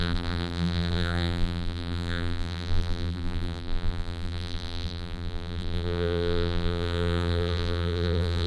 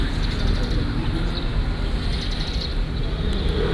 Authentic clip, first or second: second